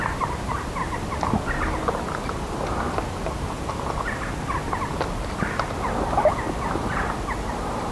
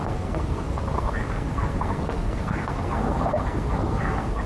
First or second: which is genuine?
first